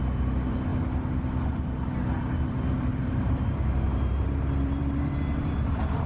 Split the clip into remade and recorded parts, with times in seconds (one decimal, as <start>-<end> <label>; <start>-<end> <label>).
0.0-2.9 recorded; 2.9-5.1 remade; 5.1-6.1 recorded